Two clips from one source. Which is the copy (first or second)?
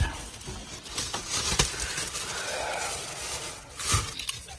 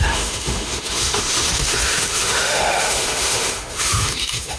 second